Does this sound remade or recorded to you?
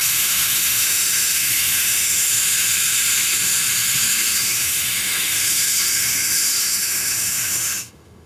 remade